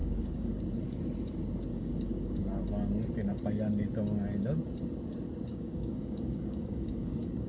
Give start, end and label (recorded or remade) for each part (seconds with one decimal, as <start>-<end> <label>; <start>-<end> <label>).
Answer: 0.0-0.6 remade; 0.6-1.7 recorded; 1.7-2.4 remade; 2.4-5.5 recorded; 5.5-7.5 remade